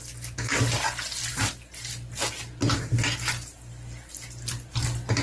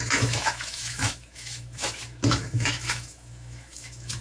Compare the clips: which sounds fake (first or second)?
second